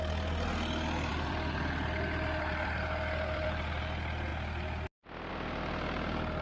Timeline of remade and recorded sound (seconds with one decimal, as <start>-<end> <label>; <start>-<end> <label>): 0.0-1.1 recorded; 1.1-3.8 remade; 3.8-6.4 recorded